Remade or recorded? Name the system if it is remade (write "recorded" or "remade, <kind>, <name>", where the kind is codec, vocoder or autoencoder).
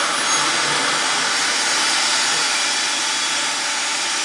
recorded